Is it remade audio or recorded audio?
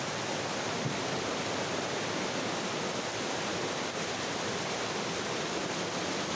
remade